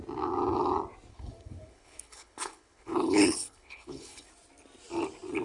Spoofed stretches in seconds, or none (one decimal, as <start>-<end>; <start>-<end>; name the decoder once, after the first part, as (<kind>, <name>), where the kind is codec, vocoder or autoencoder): 1.1-4.3 (codec, HILCodec)